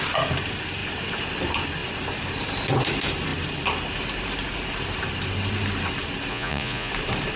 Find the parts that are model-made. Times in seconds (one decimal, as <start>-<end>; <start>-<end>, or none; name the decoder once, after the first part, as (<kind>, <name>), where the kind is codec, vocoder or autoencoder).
6.3-6.9 (vocoder, Vocos)